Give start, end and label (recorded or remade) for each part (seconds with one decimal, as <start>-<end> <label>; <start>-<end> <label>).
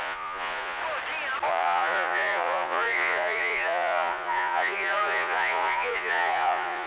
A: 0.0-0.8 remade; 0.8-1.5 recorded; 1.5-6.9 remade